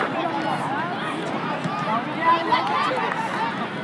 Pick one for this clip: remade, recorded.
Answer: recorded